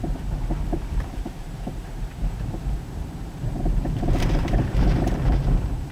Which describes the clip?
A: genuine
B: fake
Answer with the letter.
B